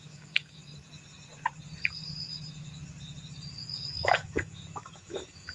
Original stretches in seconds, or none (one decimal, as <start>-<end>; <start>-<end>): 0.6-3.9